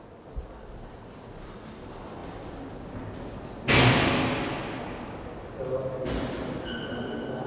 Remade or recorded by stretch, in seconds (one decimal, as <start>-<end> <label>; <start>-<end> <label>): 0.0-7.5 recorded